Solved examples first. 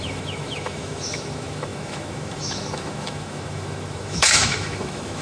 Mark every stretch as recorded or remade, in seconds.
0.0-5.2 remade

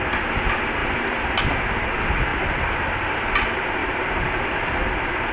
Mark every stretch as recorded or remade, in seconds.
0.0-0.8 recorded; 0.8-1.4 remade; 1.4-3.8 recorded; 3.8-5.3 remade

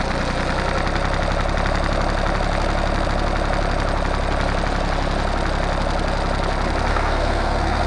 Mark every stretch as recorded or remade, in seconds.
0.0-6.9 recorded; 6.9-7.9 remade

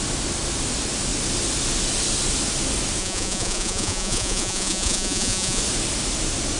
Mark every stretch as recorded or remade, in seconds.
0.0-3.0 recorded; 3.0-5.6 remade; 5.6-6.6 recorded

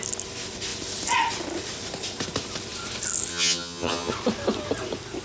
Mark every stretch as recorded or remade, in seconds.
0.0-3.3 recorded; 3.3-4.1 remade; 4.1-5.2 recorded